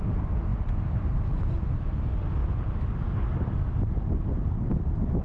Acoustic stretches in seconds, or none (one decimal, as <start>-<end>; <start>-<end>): 0.0-5.2